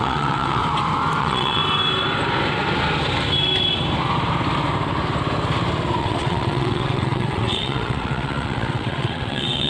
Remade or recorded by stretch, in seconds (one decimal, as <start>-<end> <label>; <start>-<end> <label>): 0.0-0.6 remade; 0.6-1.2 recorded; 1.2-1.6 remade; 1.6-6.0 recorded; 6.0-9.7 remade